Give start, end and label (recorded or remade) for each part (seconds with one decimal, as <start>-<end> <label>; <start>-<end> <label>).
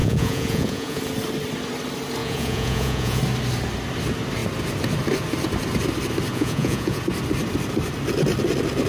0.0-1.0 remade; 1.0-2.2 recorded; 2.2-3.2 remade; 3.2-6.3 recorded; 6.3-7.0 remade; 7.0-8.9 recorded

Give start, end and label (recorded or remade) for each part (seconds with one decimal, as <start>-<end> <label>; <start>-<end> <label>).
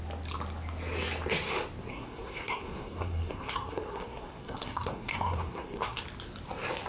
0.0-1.9 recorded; 1.9-6.0 remade; 6.0-6.9 recorded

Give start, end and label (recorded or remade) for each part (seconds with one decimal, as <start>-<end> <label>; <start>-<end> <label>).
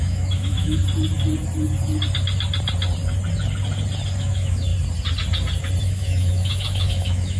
0.0-0.8 remade; 0.8-4.2 recorded; 4.2-4.7 remade; 4.7-5.8 recorded; 5.8-7.4 remade